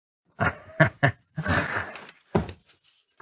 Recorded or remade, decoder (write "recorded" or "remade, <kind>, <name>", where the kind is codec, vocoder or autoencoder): remade, vocoder, BigVGAN v2